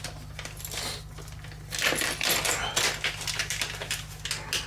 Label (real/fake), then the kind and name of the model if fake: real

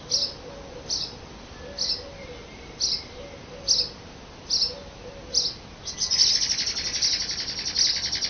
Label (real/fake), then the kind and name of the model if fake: real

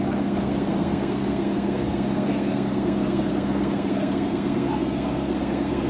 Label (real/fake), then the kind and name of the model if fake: fake, codec, SNAC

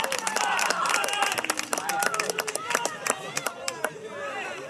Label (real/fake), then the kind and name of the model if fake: real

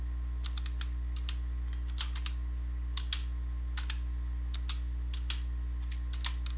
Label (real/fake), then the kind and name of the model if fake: real